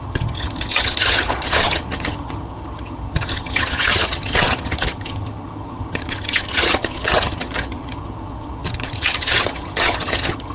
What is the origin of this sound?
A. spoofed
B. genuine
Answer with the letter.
A